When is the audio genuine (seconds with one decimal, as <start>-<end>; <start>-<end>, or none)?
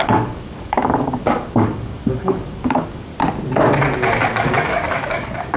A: 3.1-4.3